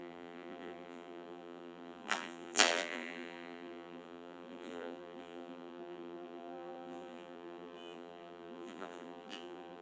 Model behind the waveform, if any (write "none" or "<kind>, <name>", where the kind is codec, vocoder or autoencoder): vocoder, BigVGAN v2